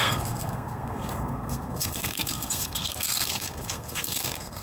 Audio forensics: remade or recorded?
remade